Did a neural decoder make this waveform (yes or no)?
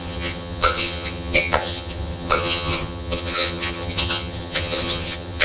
yes